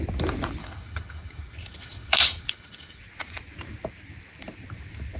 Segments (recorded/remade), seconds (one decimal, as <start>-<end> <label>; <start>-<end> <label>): 0.0-0.6 recorded; 0.6-3.0 remade; 3.0-5.2 recorded